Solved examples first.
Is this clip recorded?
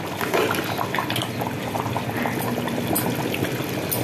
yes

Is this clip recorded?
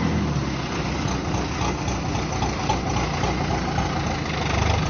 yes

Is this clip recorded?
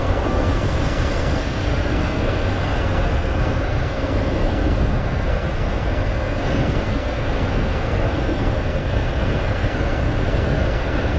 no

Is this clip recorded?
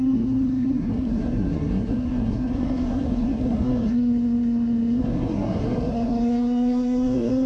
no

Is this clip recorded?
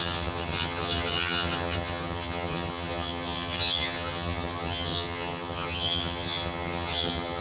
no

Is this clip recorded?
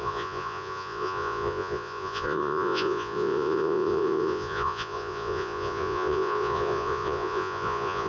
no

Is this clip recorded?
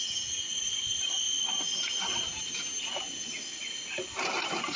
yes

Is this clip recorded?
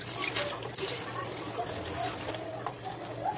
yes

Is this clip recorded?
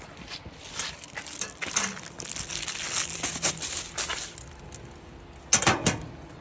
yes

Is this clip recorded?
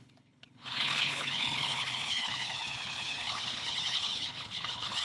no